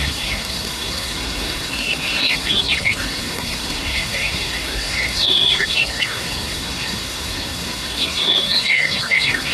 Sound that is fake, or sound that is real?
fake